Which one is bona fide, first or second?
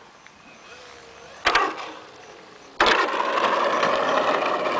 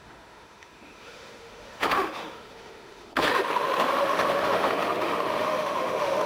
first